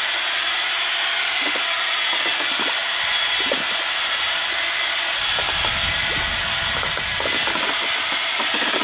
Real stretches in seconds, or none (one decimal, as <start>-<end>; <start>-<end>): 0.0-8.8